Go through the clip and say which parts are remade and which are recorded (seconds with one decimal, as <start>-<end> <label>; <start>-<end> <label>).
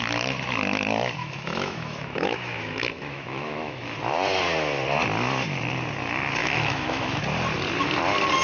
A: 0.0-1.2 recorded; 1.2-3.8 remade; 3.8-6.4 recorded; 6.4-7.2 remade; 7.2-8.4 recorded